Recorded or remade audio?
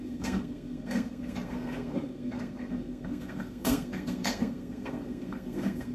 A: remade